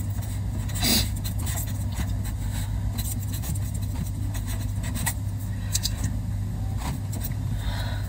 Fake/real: real